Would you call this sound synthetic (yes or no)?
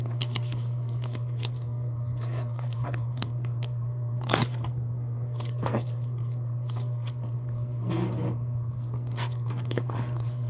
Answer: yes